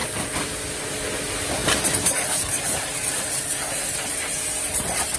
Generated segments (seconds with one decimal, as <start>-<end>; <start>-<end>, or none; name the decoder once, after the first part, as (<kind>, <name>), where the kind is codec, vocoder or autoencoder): none